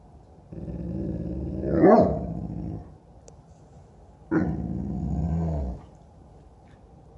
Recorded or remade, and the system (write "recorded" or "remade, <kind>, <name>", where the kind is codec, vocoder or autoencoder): recorded